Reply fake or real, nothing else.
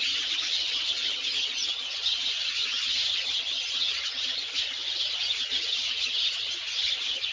fake